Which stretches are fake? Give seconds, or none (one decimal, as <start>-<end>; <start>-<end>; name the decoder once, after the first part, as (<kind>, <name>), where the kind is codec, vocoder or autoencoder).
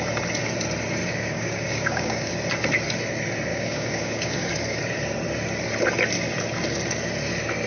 1.0-2.3 (codec, DAC); 3.5-4.5